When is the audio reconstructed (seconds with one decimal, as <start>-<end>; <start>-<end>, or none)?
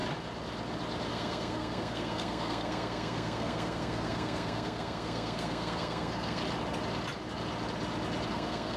1.1-6.4; 8.3-8.8